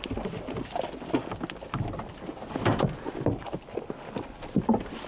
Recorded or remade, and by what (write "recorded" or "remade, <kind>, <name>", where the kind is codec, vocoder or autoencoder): recorded